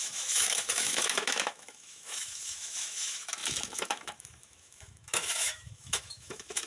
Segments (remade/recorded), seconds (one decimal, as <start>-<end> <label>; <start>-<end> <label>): 0.0-6.7 remade